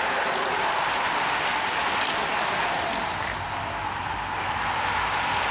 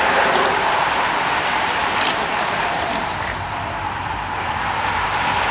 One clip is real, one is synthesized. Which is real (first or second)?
first